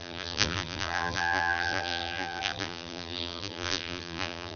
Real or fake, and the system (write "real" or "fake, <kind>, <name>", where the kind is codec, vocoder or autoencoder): fake, vocoder, BigVGAN v2